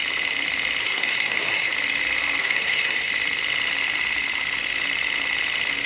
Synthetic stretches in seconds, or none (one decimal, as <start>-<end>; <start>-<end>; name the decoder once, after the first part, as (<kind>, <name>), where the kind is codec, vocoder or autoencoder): 0.8-1.7 (codec, SNAC); 2.4-3.1

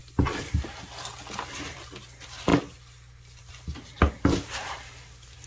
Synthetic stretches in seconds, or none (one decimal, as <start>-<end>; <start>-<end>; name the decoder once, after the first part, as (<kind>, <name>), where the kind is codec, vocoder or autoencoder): none

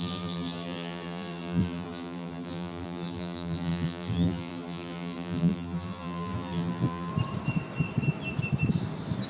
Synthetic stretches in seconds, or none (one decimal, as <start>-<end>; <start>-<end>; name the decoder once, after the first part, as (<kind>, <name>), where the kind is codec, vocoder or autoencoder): 0.0-7.1 (vocoder, BigVGAN v2)

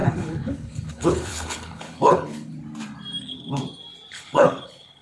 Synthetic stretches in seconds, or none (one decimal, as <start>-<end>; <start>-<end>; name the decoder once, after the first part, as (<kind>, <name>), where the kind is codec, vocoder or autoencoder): 0.0-2.5 (codec, HILCodec); 3.2-3.6; 4.1-5.0

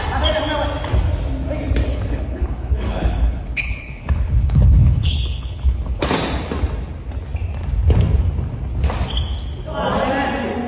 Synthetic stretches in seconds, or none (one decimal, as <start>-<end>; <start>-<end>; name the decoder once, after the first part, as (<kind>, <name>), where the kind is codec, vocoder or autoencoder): 1.9-6.0 (codec, HILCodec)

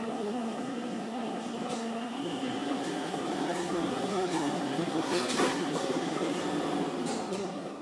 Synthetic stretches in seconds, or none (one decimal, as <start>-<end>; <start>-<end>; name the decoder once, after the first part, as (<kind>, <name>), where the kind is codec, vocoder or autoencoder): 0.0-6.4 (codec, SNAC); 7.3-7.8

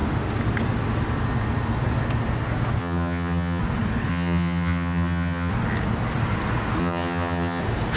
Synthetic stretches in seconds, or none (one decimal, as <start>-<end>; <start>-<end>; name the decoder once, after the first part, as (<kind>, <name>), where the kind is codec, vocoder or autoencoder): 2.8-3.6 (vocoder, HiFi-GAN); 4.1-5.5; 6.8-7.6